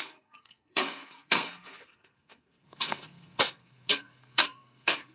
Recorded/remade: remade